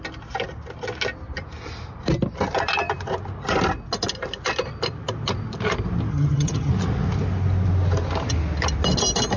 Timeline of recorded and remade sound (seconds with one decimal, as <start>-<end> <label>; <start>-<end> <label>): 0.0-6.1 recorded; 6.1-6.7 remade; 6.7-9.4 recorded